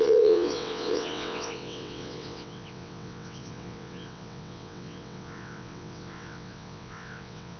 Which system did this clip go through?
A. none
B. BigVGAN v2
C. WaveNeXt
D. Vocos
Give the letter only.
C